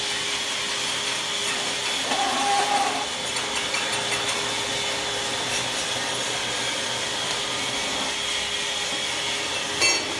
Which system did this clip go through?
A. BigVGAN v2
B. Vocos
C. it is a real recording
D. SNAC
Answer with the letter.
C